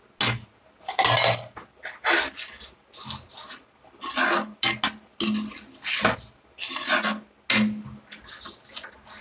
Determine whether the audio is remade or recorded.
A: recorded